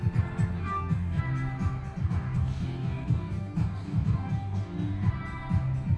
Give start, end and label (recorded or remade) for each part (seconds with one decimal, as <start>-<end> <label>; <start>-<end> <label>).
0.0-0.6 recorded; 0.6-1.2 remade; 1.2-2.0 recorded; 2.0-5.1 remade; 5.1-6.0 recorded